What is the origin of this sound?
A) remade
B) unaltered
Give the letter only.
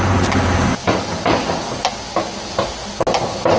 B